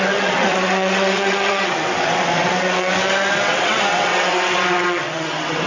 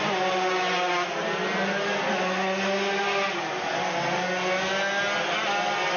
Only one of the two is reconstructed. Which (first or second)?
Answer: first